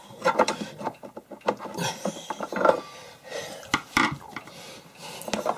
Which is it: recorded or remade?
recorded